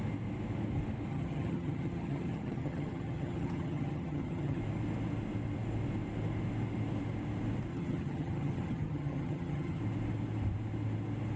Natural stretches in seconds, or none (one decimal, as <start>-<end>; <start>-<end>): 0.0-1.1; 4.6-7.7; 9.8-11.4

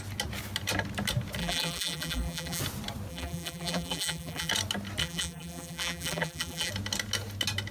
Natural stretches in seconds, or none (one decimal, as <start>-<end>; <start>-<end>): 0.0-1.4; 2.6-3.1; 4.5-5.0; 6.7-7.7

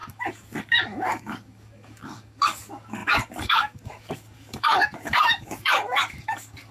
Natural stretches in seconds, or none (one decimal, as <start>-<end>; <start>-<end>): none

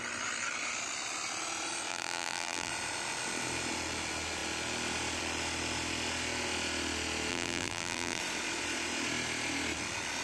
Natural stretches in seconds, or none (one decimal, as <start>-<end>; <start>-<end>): 0.0-1.9; 2.7-7.3; 8.2-10.2

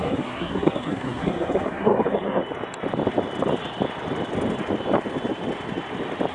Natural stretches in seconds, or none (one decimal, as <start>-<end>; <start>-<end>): 2.4-6.3